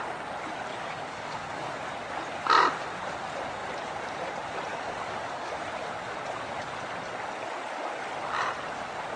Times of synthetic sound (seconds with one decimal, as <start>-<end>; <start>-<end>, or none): 0.7-1.8; 4.7-5.5